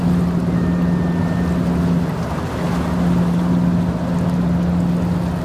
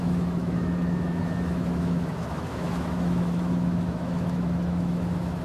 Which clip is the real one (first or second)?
first